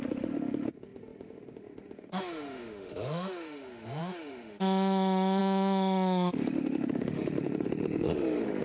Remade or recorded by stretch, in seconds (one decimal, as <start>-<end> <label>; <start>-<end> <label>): 0.0-8.6 remade